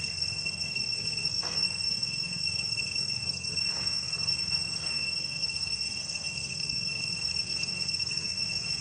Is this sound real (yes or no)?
no